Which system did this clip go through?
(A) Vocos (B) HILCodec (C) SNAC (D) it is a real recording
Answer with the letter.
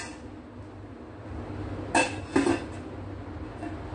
D